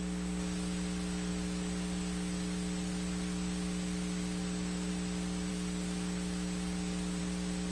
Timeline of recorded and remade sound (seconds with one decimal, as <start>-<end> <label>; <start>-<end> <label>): 0.0-7.7 recorded